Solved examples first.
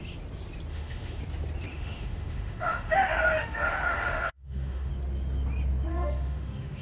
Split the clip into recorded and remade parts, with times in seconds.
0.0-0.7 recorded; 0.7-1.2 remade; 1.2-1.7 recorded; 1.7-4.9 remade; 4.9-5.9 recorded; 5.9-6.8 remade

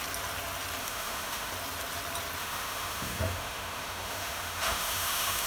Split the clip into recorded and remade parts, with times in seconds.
0.0-0.8 recorded; 0.8-1.5 remade; 1.5-2.4 recorded; 2.4-5.5 remade

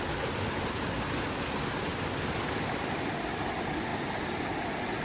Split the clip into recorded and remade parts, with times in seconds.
0.0-5.0 recorded